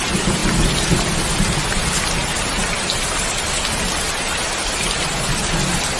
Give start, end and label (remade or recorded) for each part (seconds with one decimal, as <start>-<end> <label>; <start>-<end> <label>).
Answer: 0.0-6.0 recorded